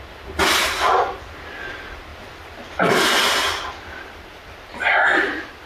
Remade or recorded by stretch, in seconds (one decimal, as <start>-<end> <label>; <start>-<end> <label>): 0.0-5.7 recorded